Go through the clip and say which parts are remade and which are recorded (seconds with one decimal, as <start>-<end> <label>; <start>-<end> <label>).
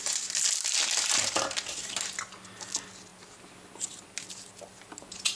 0.0-5.4 recorded